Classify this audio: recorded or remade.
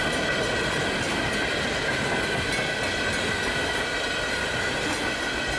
recorded